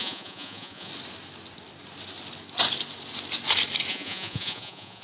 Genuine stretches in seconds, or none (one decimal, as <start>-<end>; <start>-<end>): 0.9-3.9